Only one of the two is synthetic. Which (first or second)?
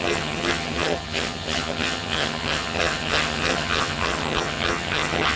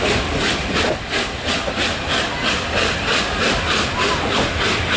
first